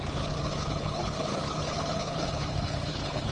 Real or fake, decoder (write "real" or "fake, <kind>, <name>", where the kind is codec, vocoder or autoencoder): fake, codec, HILCodec